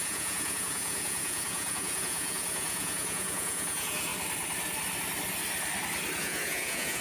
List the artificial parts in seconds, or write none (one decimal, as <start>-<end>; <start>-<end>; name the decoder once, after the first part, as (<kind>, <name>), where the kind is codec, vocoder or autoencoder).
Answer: 0.0-4.1 (vocoder, Vocos); 6.2-7.0